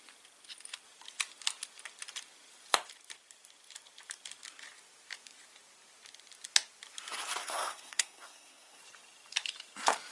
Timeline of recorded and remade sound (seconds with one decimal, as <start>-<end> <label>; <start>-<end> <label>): 0.0-7.4 recorded; 7.4-8.8 remade; 8.8-10.1 recorded